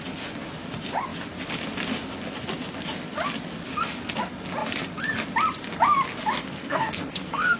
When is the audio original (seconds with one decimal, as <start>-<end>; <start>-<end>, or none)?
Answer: 0.0-6.4